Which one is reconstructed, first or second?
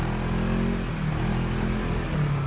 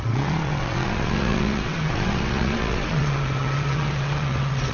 second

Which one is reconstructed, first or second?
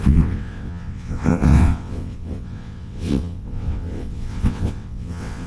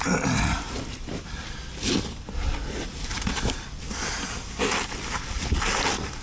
first